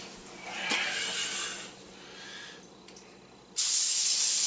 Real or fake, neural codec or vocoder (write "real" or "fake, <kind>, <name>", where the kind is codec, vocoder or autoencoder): real